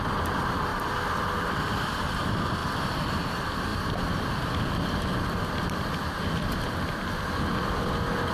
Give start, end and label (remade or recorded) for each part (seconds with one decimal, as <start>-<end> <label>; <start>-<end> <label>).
0.0-8.3 recorded